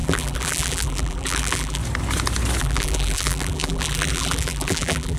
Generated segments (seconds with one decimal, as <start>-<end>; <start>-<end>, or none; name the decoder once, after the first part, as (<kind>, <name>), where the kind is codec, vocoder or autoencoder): 0.0-1.8 (vocoder, BigVGAN v2); 2.6-5.2